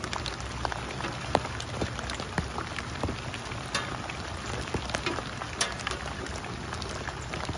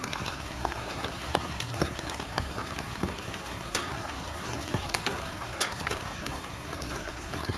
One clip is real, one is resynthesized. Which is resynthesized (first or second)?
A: second